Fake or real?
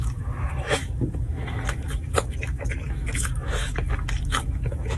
fake